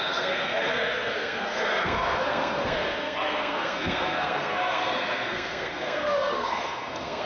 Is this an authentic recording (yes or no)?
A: no